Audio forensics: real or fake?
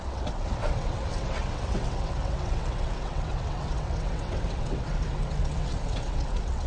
fake